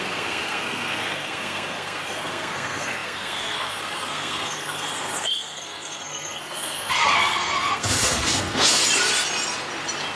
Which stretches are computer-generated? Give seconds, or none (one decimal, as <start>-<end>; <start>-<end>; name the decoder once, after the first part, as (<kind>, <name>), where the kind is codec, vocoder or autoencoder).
0.0-8.8 (codec, SNAC)